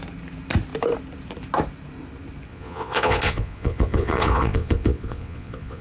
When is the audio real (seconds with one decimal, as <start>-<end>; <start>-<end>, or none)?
0.0-2.5